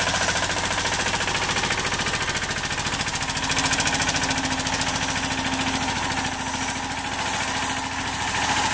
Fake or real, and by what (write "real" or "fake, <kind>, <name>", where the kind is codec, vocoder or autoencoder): real